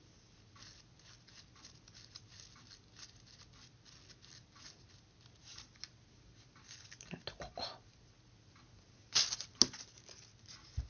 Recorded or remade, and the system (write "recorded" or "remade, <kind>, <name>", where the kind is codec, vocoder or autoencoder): recorded